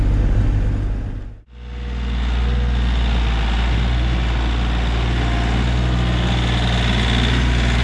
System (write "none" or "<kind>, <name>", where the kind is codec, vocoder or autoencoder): none